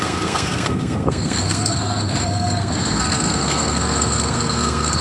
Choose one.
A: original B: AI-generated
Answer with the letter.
B